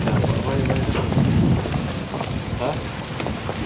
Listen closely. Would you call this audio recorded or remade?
recorded